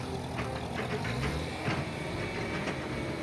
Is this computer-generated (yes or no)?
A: no